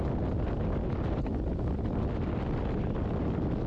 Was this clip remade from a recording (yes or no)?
no